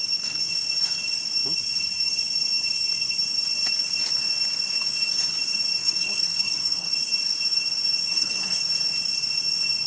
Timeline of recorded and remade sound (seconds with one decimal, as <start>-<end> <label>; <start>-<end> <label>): 0.0-5.8 recorded; 5.8-6.9 remade; 6.9-8.1 recorded; 8.1-8.6 remade; 8.6-9.9 recorded